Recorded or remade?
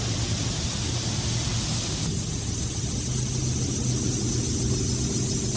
recorded